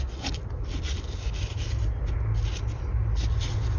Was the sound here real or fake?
real